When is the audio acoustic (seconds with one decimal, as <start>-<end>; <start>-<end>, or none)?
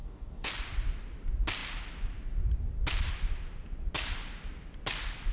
0.5-5.3